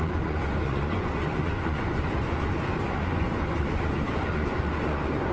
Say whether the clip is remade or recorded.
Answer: remade